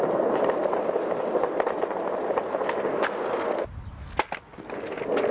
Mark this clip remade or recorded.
recorded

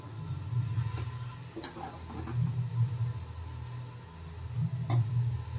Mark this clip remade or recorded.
recorded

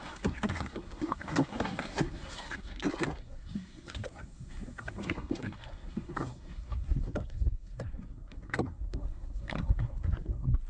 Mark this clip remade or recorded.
remade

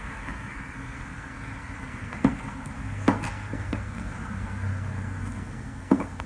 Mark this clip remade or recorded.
remade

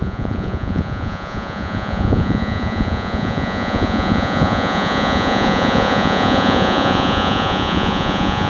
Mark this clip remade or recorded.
remade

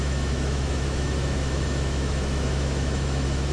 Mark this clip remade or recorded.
remade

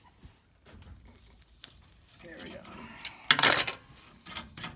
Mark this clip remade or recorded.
recorded